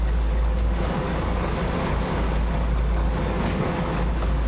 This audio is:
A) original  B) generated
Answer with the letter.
B